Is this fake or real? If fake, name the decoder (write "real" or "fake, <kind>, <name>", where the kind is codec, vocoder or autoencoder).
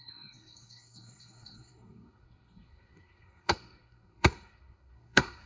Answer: fake, codec, SNAC